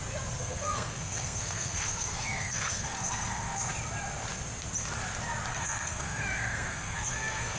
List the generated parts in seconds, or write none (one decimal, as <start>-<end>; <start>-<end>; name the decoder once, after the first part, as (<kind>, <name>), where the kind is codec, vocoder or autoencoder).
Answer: 0.4-3.7 (codec, SNAC); 5.5-7.6